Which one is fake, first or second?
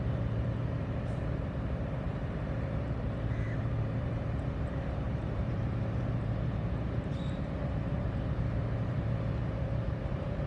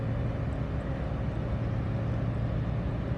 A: first